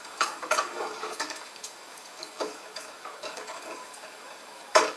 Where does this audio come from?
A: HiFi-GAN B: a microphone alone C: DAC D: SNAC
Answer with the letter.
C